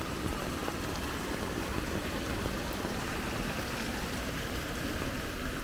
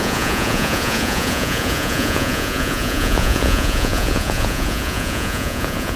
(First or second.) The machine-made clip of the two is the second